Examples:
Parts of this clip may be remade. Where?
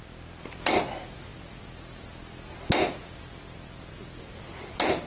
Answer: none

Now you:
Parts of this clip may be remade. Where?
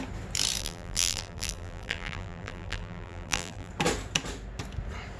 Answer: 0.6-3.7 (vocoder, BigVGAN v2)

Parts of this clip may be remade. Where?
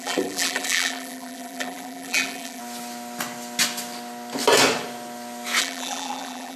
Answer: 0.0-2.6 (vocoder, BigVGAN v2); 5.6-6.6